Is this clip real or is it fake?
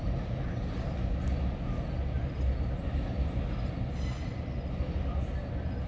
real